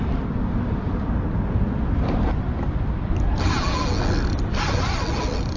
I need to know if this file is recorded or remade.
recorded